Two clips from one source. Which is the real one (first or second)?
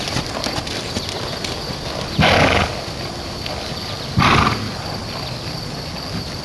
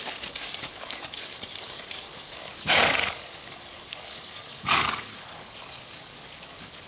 first